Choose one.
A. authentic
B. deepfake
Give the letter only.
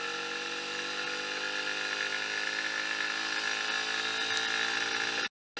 A